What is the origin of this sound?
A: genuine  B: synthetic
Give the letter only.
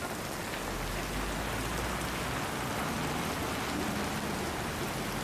A